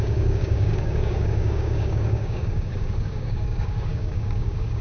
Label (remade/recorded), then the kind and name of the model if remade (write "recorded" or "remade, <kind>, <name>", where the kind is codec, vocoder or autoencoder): remade, codec, DAC